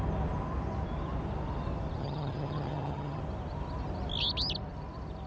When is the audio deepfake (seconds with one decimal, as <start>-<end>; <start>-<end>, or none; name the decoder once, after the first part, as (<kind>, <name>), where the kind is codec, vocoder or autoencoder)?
2.0-3.2 (vocoder, HiFi-GAN)